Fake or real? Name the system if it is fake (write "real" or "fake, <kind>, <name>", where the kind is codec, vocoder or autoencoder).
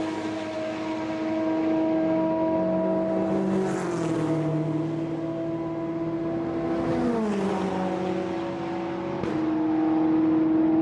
real